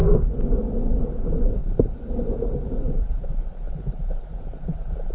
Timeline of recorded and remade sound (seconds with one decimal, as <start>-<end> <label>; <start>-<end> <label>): 0.0-1.0 recorded; 1.0-5.1 remade